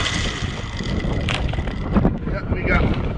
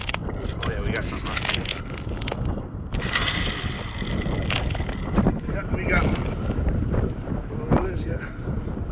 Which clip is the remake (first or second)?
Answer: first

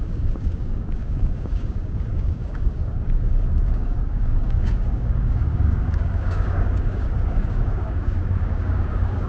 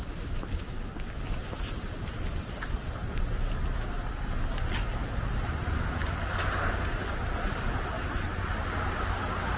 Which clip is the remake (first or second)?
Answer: first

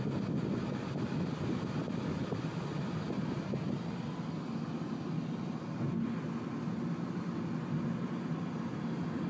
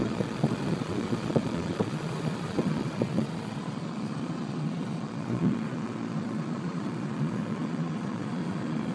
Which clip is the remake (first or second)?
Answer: second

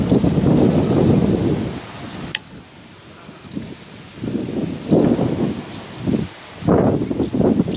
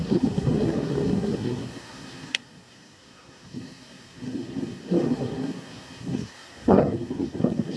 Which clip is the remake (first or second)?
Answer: second